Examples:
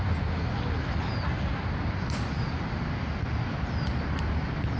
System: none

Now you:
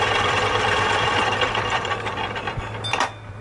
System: vocoder, BigVGAN v2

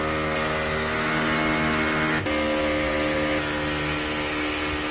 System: none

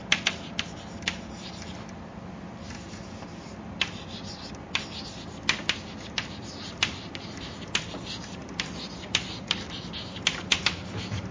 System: none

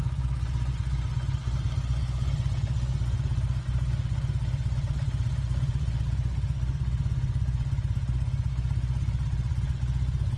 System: vocoder, Vocos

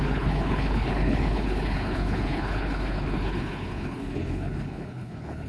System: codec, HILCodec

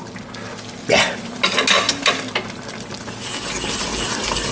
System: none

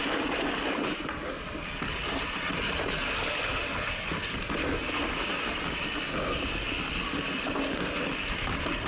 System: none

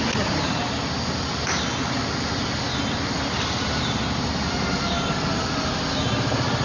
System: none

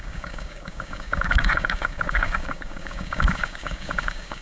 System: codec, DAC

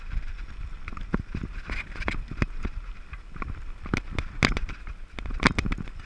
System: none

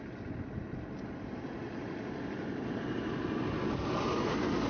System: none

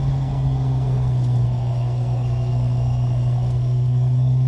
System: codec, SNAC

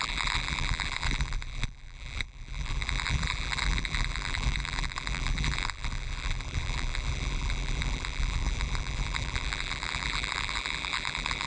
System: vocoder, BigVGAN v2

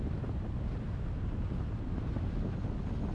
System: none